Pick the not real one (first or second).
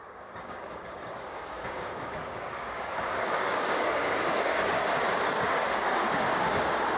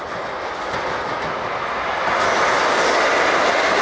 first